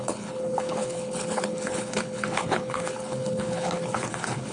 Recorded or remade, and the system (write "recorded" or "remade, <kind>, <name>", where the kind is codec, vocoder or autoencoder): remade, codec, HILCodec